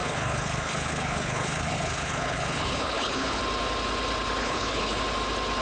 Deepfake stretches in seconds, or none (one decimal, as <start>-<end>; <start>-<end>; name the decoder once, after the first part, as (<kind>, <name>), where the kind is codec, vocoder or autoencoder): 0.0-3.4 (codec, HILCodec); 4.4-5.0